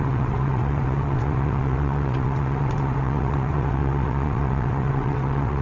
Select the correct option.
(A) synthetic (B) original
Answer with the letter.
A